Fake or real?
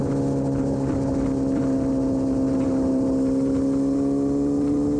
real